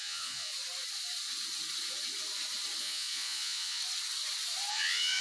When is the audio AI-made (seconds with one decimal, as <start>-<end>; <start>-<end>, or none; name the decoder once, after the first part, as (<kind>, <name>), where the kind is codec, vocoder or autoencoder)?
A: 0.0-0.5 (vocoder, Vocos); 2.8-3.8; 4.7-5.2